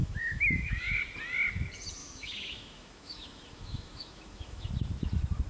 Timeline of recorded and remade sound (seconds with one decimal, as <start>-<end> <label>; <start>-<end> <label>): 0.0-1.0 remade; 1.0-2.0 recorded; 2.0-4.7 remade; 4.7-5.5 recorded